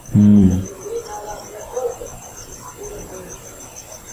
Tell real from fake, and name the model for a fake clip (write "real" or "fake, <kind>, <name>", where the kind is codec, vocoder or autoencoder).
real